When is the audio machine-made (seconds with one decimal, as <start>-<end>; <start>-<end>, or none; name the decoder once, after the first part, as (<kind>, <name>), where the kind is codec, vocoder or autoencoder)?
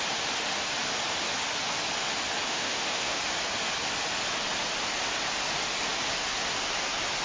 2.5-3.2 (autoencoder, DAC-VAE)